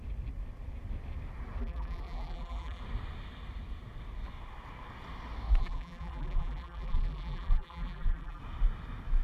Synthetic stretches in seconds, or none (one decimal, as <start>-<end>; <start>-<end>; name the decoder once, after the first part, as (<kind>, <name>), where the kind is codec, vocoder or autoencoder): 1.6-2.8 (vocoder, BigVGAN v2); 5.6-8.4